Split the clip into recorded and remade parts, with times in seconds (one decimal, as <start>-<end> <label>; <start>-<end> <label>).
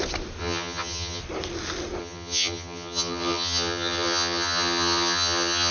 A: 0.0-0.4 recorded; 0.4-1.2 remade; 1.2-2.0 recorded; 2.0-5.7 remade